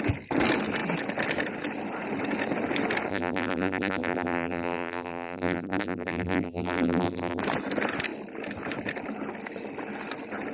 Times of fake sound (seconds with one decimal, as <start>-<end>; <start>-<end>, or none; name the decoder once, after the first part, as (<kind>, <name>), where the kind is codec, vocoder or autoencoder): 3.1-7.4 (vocoder, BigVGAN v2)